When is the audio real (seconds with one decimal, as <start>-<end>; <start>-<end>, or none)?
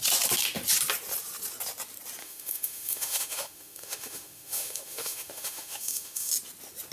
0.0-2.2; 6.3-6.9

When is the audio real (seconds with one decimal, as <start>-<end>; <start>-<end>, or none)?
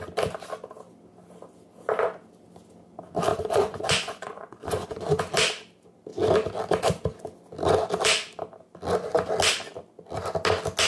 0.0-3.3; 5.2-10.9